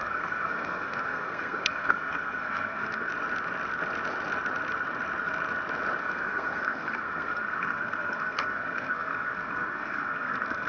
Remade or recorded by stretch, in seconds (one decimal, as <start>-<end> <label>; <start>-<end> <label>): 0.0-3.1 remade; 3.1-6.0 recorded; 6.0-10.7 remade